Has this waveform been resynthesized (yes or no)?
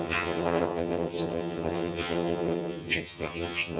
yes